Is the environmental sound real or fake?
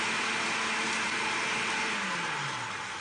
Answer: real